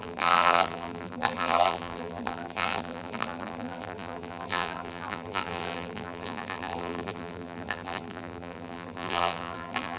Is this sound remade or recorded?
remade